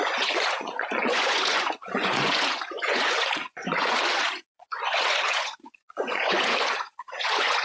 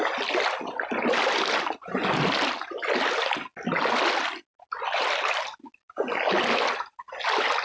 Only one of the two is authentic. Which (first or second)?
second